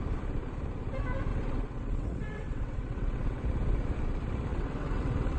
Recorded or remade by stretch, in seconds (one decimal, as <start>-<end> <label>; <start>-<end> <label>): 0.0-1.3 recorded; 1.3-3.4 remade; 3.4-4.5 recorded; 4.5-5.4 remade